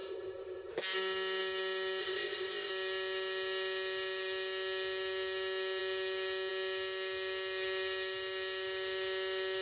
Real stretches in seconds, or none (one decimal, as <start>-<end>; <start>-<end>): 0.7-2.0; 2.7-9.6